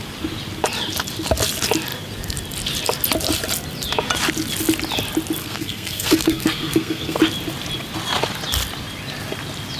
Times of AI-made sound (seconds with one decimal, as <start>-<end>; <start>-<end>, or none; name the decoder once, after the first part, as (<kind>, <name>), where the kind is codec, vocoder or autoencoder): 5.4-7.2 (codec, SNAC)

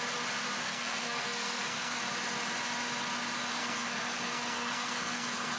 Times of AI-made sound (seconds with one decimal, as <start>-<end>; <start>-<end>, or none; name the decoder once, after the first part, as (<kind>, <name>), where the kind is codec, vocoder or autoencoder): 0.6-2.0 (codec, SNAC); 3.6-5.6

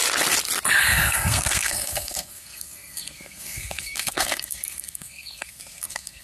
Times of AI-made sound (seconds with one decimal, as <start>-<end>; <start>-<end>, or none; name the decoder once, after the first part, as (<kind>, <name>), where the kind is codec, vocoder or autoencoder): 0.8-6.2 (codec, SNAC)

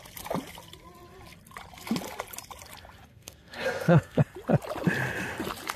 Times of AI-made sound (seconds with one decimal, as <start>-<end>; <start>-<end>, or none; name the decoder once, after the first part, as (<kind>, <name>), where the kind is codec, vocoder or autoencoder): 3.1-4.2 (codec, SNAC)

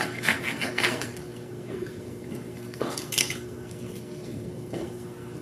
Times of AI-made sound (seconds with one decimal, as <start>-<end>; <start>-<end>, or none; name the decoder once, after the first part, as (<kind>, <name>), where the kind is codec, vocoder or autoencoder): 0.0-5.4 (codec, SNAC)

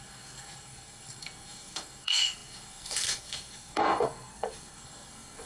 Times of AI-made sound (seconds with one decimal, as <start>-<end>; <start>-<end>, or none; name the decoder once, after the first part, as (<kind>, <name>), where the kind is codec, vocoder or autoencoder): 0.0-5.5 (codec, SNAC)

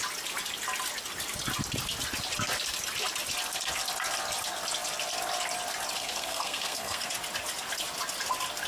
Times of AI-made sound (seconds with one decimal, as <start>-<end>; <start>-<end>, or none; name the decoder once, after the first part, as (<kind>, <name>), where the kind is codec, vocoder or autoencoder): 6.0-7.1 (codec, SNAC)